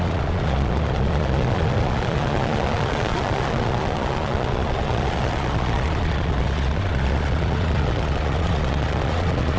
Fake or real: fake